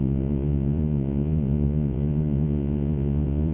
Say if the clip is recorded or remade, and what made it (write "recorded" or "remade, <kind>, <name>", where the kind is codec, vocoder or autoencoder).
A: remade, vocoder, Vocos